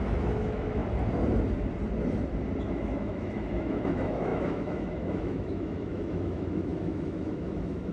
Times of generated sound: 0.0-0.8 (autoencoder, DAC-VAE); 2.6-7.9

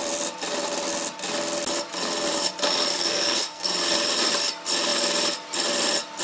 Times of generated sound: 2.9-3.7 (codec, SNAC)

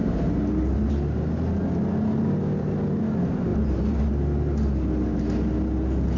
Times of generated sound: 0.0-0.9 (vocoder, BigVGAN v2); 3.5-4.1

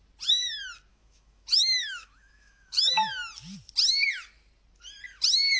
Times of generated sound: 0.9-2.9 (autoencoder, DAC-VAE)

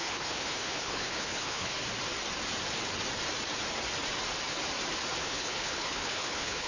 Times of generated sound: 0.0-1.8 (codec, HILCodec); 5.2-6.7

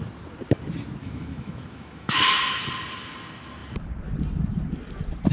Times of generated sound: 1.0-2.6 (autoencoder, DAC-VAE)

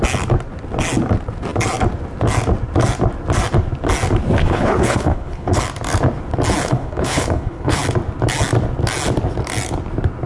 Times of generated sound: 4.4-5.6 (codec, HILCodec); 6.6-7.8